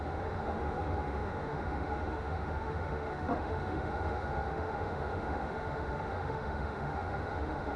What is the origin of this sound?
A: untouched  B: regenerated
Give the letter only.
B